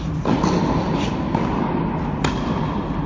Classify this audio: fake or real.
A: real